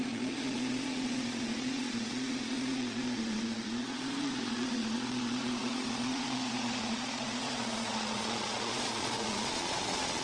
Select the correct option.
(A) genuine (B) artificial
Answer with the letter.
B